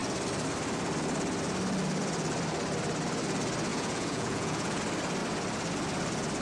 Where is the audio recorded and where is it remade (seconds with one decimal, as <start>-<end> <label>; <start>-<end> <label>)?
0.0-3.7 recorded; 3.7-4.8 remade; 4.8-6.4 recorded